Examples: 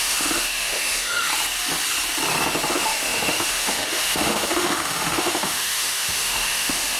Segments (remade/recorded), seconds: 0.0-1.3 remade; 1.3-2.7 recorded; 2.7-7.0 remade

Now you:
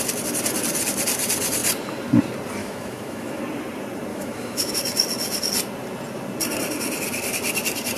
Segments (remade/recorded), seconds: 0.0-2.6 recorded; 2.6-3.4 remade; 3.4-4.1 recorded; 4.1-4.7 remade; 4.7-8.0 recorded

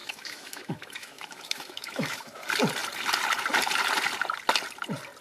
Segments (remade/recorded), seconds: 0.0-2.4 remade; 2.4-5.2 recorded